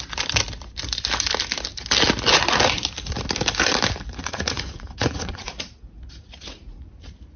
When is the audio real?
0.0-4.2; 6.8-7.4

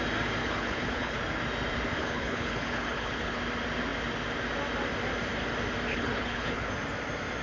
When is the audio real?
0.0-0.4; 1.2-2.0; 3.4-5.9; 6.7-7.4